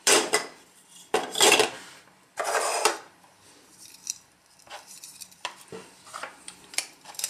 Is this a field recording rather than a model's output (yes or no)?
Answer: no